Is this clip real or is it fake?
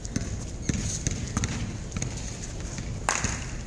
real